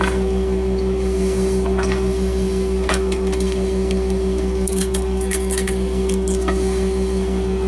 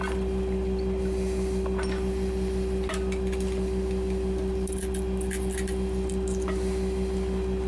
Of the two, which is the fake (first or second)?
first